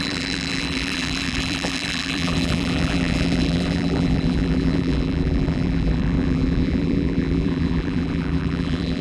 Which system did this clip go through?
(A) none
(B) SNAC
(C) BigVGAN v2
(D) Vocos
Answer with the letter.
C